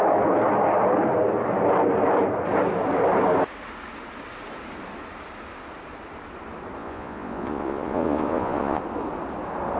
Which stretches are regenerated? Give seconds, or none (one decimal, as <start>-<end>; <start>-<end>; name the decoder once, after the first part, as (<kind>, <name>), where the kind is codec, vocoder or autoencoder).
6.8-8.8 (vocoder, Vocos)